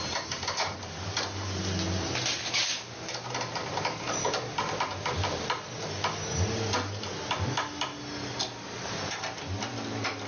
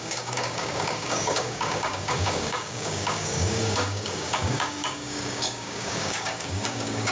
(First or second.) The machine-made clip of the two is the second